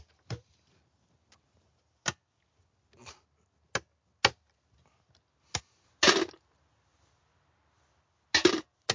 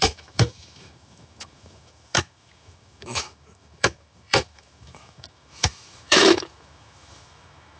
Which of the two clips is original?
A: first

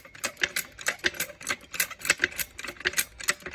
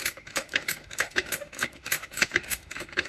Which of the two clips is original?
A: first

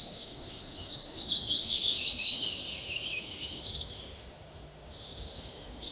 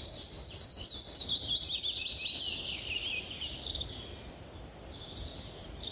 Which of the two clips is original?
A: second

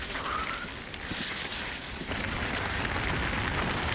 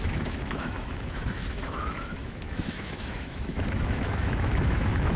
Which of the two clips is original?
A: first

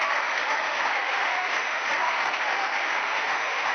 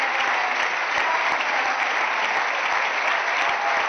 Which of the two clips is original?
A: second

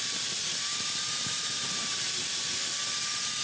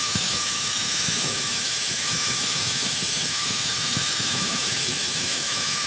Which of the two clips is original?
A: first